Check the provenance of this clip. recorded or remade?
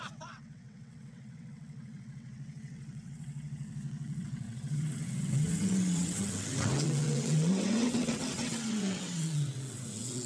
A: remade